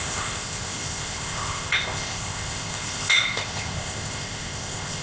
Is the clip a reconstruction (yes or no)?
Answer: yes